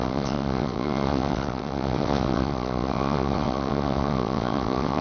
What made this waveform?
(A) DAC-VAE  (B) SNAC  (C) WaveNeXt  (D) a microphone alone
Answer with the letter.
C